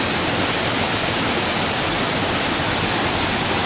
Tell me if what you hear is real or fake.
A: real